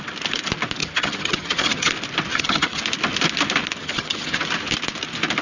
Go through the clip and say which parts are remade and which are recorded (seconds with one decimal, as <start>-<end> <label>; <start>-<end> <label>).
0.0-0.8 recorded; 0.8-1.9 remade; 1.9-2.3 recorded; 2.3-2.8 remade; 2.8-3.8 recorded; 3.8-4.4 remade; 4.4-5.4 recorded